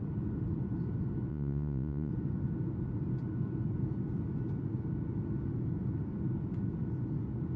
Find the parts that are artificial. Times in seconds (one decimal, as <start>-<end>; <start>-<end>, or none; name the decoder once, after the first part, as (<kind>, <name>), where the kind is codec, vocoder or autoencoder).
1.3-2.1 (vocoder, Vocos)